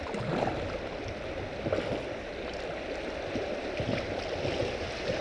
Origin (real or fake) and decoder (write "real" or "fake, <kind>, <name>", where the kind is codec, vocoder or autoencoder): real